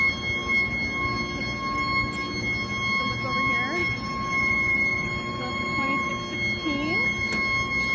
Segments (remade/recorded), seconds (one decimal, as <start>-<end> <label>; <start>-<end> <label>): 0.0-3.8 recorded; 3.8-6.1 remade; 6.1-7.9 recorded